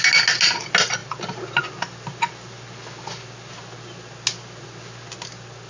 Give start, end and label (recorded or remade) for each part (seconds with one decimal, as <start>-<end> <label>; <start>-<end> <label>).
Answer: 0.0-5.7 recorded